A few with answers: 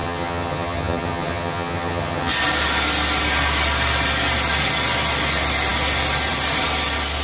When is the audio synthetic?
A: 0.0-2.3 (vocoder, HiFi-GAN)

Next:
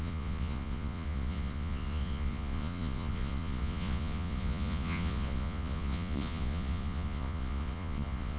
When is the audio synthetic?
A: 0.0-8.4 (vocoder, Vocos)

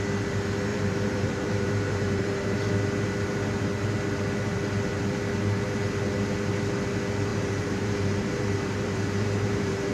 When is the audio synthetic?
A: 0.7-2.7 (vocoder, BigVGAN v2); 7.3-9.9

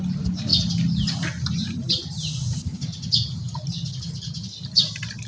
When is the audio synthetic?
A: none

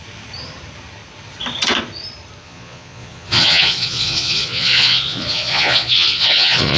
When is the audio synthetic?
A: 2.4-6.8 (vocoder, Vocos)

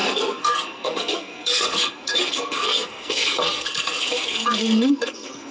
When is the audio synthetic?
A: 0.0-5.5 (codec, SNAC)